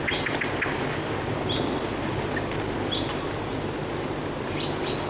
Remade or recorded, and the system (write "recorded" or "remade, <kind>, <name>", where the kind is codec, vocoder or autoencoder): recorded